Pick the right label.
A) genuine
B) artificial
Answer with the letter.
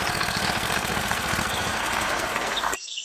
B